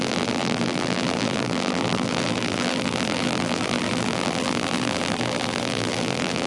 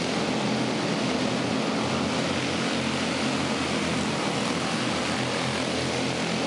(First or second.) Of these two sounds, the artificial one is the first